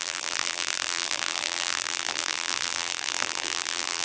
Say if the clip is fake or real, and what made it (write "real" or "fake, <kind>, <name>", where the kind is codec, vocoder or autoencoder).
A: fake, vocoder, BigVGAN v2